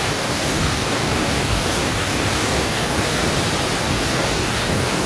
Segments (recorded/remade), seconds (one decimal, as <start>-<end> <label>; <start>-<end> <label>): 0.0-3.2 remade; 3.2-3.8 recorded; 3.8-5.1 remade